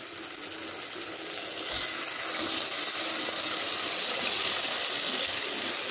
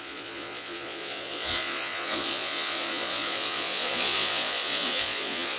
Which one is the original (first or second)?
first